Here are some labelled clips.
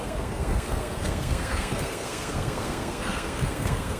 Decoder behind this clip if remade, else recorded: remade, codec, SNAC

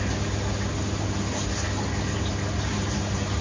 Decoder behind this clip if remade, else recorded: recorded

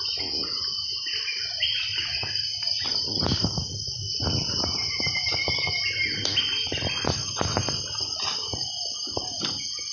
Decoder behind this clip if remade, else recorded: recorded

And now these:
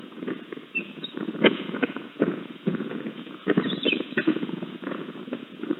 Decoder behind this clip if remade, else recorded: remade, vocoder, Vocos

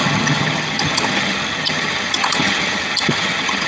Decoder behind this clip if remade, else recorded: remade, vocoder, HiFi-GAN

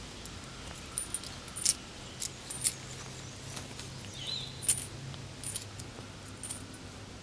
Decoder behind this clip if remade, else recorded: recorded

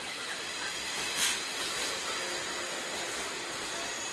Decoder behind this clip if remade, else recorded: recorded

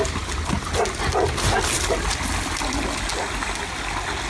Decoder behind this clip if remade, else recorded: recorded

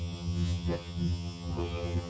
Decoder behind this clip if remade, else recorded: remade, vocoder, HiFi-GAN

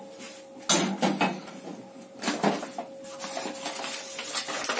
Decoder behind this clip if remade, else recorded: recorded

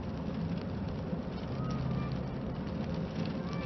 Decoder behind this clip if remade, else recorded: recorded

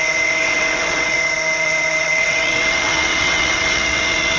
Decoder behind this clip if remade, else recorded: remade, vocoder, WaveNeXt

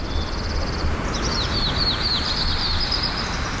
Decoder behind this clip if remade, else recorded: recorded